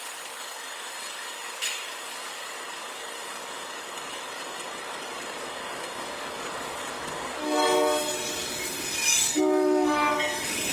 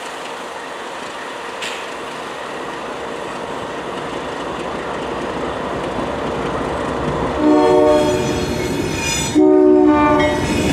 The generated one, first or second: first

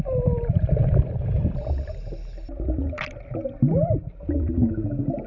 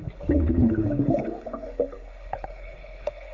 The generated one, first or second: second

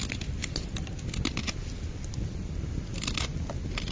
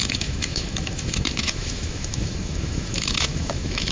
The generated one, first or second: second